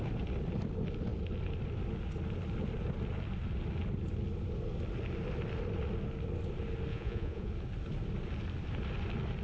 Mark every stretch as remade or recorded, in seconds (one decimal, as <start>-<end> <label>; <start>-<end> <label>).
0.0-6.9 recorded; 6.9-7.5 remade; 7.5-9.4 recorded

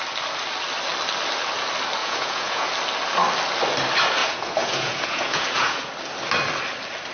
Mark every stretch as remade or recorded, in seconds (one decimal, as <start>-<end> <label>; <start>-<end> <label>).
0.0-2.0 recorded; 2.0-2.7 remade; 2.7-4.2 recorded; 4.2-5.9 remade; 5.9-7.1 recorded